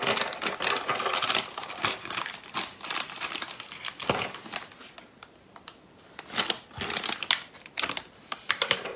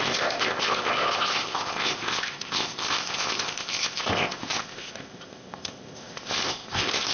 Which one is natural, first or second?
first